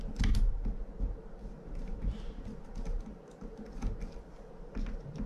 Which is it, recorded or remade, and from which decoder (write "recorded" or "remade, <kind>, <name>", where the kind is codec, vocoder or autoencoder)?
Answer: recorded